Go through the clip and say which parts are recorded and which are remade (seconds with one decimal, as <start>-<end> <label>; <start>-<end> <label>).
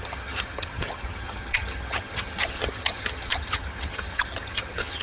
0.0-5.0 remade